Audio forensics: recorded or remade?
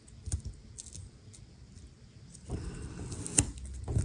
recorded